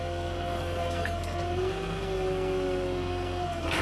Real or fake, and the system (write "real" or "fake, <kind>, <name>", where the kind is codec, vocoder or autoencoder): fake, codec, SNAC